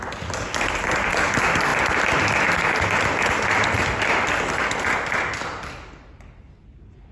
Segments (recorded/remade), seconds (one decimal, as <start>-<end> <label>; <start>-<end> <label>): 0.0-7.1 recorded